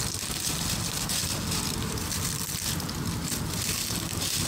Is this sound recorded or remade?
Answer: recorded